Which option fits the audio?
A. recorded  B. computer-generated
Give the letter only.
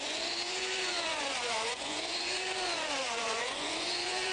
B